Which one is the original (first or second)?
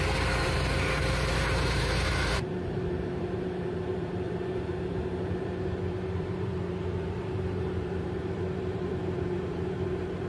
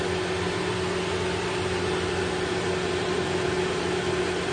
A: second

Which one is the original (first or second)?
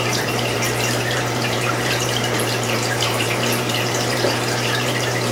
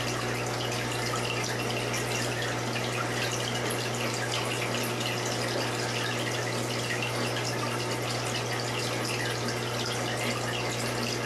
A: second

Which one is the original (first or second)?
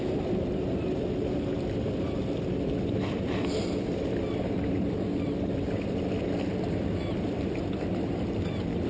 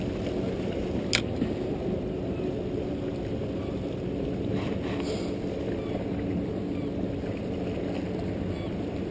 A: second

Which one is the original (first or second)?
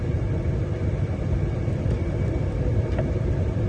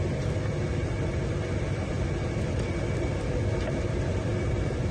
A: second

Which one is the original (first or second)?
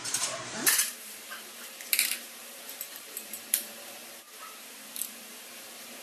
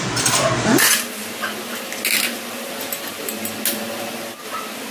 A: second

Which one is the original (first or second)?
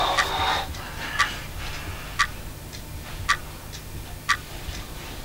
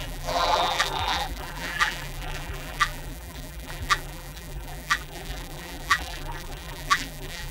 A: first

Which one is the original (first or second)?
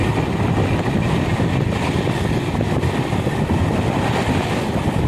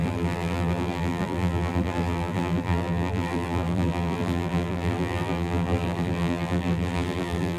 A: first